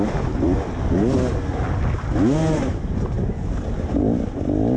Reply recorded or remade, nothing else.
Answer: recorded